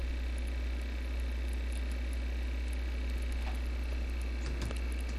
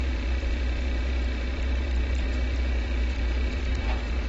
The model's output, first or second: second